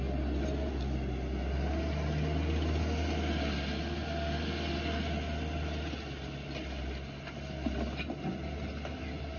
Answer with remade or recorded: recorded